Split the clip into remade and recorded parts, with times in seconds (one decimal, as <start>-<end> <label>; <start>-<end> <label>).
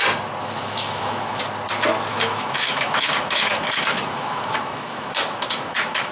0.0-0.4 recorded; 0.4-1.4 remade; 1.4-2.1 recorded; 2.1-6.1 remade